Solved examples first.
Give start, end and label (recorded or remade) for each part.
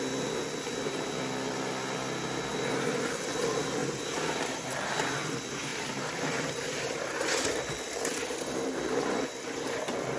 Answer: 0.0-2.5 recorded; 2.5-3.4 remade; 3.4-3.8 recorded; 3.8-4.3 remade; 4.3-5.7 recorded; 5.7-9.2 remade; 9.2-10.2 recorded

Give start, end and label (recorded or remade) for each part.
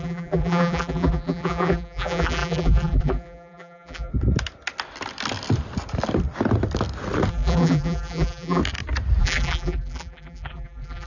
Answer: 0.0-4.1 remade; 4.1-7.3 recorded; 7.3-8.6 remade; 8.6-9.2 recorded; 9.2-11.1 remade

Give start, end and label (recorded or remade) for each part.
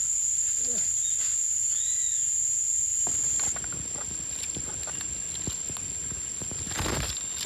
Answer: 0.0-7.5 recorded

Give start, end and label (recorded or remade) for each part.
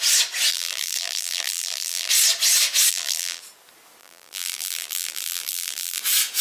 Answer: 0.0-0.5 recorded; 0.5-2.1 remade; 2.1-2.9 recorded; 2.9-3.4 remade; 3.4-4.0 recorded; 4.0-6.0 remade; 6.0-6.4 recorded